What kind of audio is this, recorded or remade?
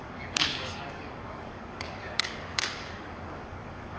remade